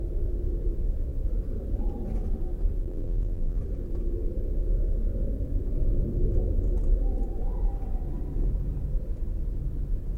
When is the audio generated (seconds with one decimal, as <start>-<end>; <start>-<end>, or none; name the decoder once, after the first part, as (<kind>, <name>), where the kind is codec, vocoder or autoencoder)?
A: 2.8-3.6 (vocoder, BigVGAN v2)